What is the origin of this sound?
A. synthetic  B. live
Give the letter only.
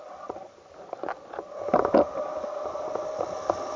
B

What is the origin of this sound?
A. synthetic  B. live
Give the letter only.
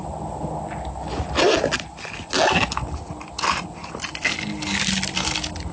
B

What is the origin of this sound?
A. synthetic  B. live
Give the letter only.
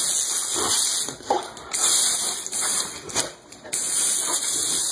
B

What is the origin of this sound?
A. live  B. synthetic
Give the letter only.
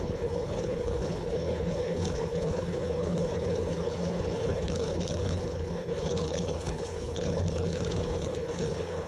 B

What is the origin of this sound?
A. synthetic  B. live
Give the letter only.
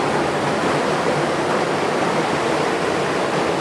B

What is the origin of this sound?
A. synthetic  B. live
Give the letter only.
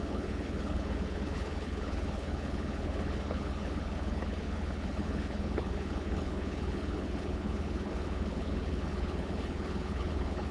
A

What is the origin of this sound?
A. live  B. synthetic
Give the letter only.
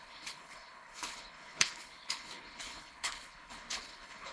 B